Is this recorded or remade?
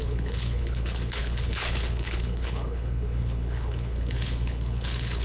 remade